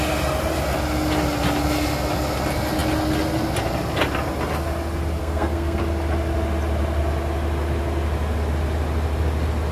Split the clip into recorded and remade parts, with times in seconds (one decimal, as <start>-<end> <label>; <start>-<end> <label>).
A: 0.0-5.2 recorded; 5.2-5.8 remade; 5.8-9.7 recorded